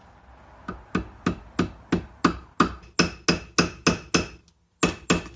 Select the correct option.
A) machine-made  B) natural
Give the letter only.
B